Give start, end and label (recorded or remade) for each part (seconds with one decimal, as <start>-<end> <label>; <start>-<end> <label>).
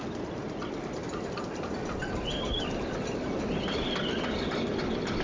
0.0-5.2 recorded